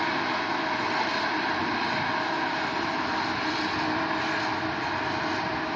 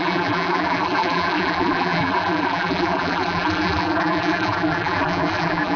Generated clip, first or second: second